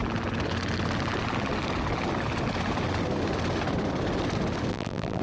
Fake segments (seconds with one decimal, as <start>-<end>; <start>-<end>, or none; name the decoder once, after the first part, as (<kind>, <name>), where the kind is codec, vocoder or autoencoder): 4.7-5.2 (vocoder, BigVGAN v2)